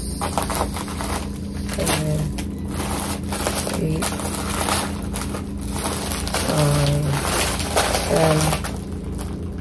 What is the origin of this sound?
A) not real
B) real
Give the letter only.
B